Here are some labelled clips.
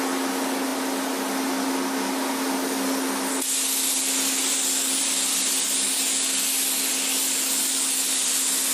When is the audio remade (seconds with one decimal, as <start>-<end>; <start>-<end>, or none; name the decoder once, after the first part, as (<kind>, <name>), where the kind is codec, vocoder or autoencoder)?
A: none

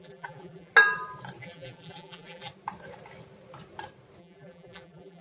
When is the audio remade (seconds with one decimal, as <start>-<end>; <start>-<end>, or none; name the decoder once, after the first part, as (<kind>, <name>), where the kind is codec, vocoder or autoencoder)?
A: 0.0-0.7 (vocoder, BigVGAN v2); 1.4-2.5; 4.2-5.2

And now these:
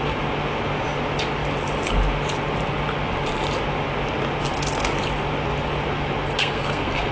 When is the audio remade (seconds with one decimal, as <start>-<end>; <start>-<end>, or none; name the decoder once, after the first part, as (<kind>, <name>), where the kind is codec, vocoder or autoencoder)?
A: 6.3-7.1 (codec, SNAC)